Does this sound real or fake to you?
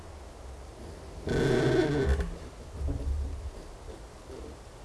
real